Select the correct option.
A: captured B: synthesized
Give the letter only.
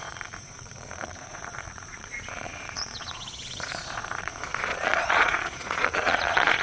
B